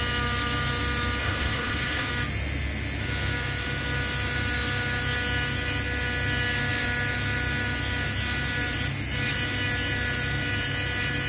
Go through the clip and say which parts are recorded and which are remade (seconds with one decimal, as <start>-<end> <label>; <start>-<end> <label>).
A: 0.0-1.2 recorded; 1.2-2.1 remade; 2.1-11.3 recorded

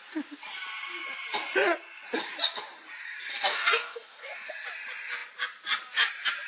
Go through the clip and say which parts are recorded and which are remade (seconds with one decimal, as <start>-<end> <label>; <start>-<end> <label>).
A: 0.0-3.3 recorded; 3.3-4.5 remade; 4.5-6.5 recorded

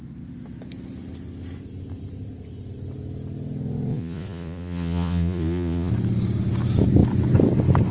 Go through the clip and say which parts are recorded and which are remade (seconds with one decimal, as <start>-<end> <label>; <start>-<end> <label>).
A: 0.0-3.9 recorded; 3.9-5.9 remade; 5.9-7.9 recorded

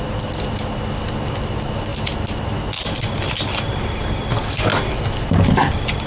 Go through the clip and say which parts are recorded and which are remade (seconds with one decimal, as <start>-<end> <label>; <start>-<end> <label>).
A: 0.0-6.1 recorded

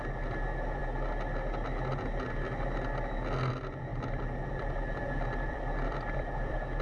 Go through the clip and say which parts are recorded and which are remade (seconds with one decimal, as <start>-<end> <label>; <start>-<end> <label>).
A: 0.0-3.9 recorded; 3.9-6.8 remade